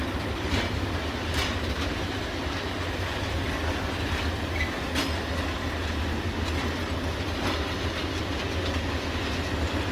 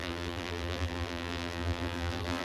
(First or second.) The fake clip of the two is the second